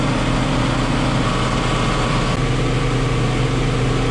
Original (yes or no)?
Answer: yes